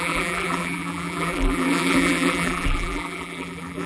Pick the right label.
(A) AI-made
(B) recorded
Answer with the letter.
A